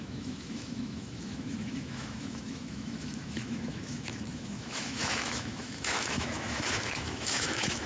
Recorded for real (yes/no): no